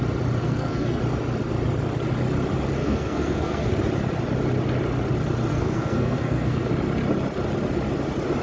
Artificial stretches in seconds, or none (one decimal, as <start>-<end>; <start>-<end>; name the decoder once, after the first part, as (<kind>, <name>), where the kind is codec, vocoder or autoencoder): 0.4-1.0 (codec, SNAC); 2.8-3.7; 5.5-6.7